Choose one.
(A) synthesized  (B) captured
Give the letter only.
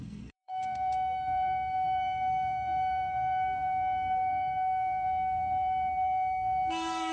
A